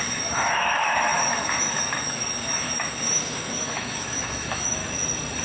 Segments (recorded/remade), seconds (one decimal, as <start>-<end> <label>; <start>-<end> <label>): 0.0-4.8 remade; 4.8-5.4 recorded